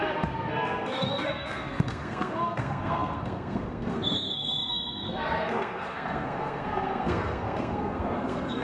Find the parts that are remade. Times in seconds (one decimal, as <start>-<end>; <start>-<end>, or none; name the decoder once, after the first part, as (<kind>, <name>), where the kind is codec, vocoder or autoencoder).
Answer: 0.0-8.6 (codec, SNAC)